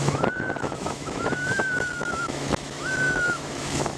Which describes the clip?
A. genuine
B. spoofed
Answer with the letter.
B